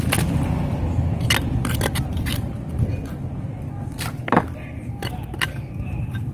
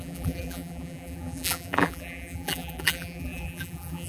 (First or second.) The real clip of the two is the first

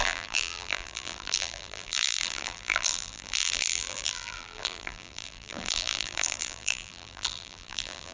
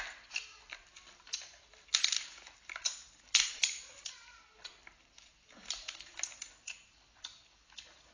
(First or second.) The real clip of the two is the second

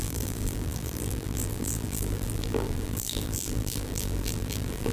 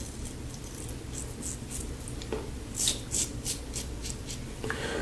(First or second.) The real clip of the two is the second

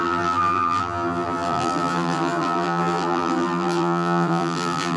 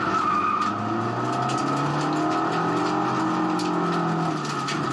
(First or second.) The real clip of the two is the second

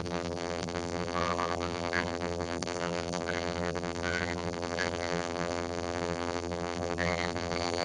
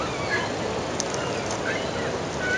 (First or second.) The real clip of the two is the second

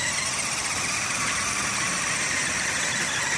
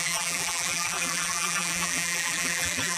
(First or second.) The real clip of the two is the first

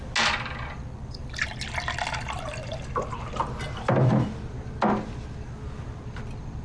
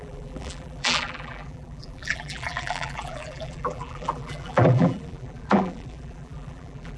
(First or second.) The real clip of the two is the first